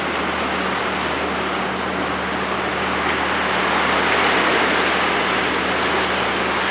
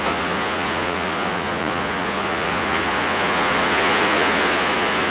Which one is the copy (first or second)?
second